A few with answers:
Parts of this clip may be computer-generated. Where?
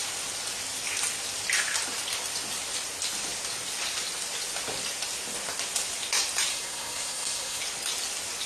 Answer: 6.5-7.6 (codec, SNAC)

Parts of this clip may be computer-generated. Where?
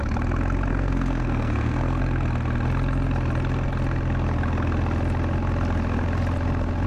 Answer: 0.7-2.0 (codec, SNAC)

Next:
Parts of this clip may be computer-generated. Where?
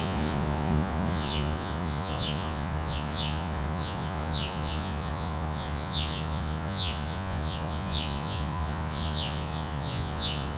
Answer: 0.0-10.6 (vocoder, Vocos)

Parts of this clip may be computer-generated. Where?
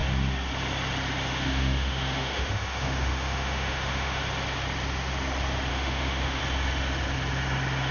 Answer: 1.3-4.2 (autoencoder, DAC-VAE); 5.7-6.4